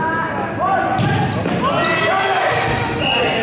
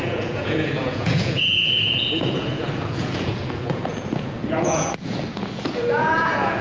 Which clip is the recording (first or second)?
first